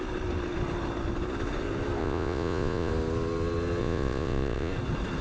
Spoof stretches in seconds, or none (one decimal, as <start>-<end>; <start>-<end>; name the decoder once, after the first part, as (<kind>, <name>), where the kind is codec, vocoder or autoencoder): 2.0-2.9 (vocoder, Vocos); 3.8-4.7